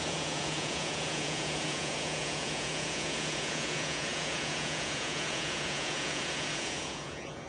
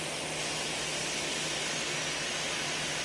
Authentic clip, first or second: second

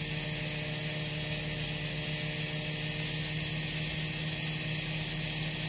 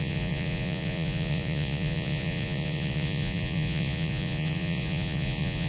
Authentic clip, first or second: first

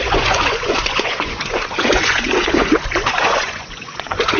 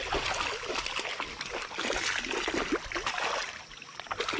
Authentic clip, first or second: second